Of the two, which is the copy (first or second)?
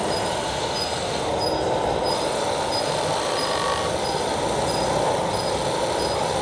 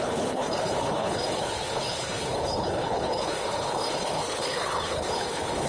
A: second